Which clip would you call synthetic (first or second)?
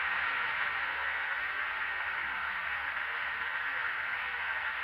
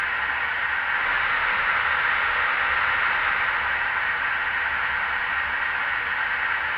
first